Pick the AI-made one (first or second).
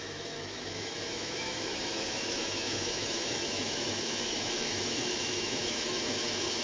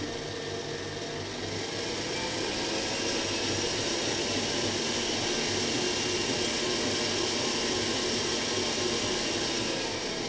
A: first